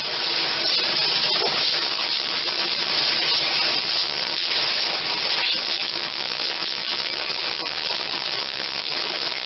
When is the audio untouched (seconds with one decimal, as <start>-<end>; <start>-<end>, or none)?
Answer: 0.0-1.7; 2.9-3.8; 4.5-5.6